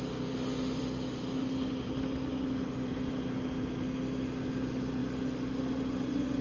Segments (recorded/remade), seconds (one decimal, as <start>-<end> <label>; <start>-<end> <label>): 0.0-6.4 recorded